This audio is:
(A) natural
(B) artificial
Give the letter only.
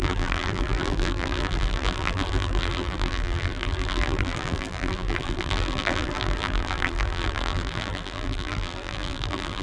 B